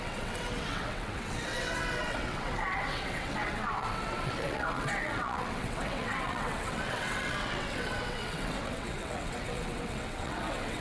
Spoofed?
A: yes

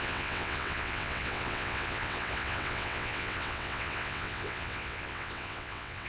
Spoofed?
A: yes